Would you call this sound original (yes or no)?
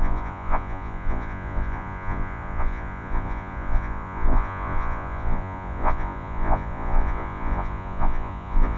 no